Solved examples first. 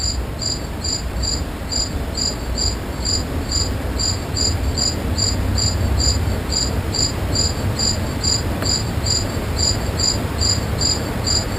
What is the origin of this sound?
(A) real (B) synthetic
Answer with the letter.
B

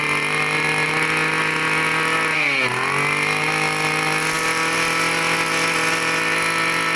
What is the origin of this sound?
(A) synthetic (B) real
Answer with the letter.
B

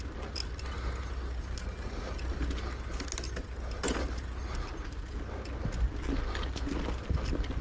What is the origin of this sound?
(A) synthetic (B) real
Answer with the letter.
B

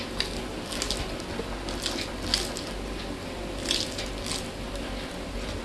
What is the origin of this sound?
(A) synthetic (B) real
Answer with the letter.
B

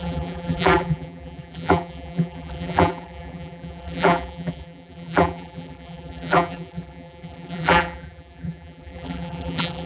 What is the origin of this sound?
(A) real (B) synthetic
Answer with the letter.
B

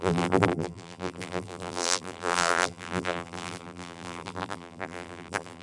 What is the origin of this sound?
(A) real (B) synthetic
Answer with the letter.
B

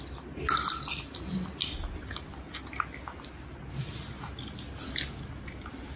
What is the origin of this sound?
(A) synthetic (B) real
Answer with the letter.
B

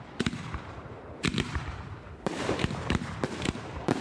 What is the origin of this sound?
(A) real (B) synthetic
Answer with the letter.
B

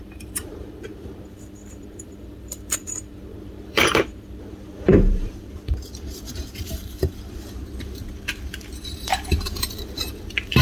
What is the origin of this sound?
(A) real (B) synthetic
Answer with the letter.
B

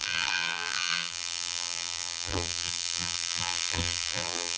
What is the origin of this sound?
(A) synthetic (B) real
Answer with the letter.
A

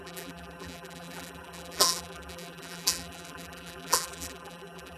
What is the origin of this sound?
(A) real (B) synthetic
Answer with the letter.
B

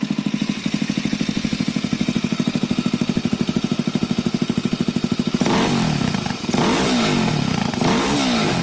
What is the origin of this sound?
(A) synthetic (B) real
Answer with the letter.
B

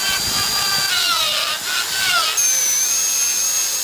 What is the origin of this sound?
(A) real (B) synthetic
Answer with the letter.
A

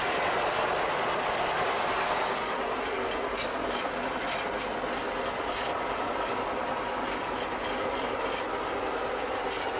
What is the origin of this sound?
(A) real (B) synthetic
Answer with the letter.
A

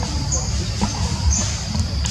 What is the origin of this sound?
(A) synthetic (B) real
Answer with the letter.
B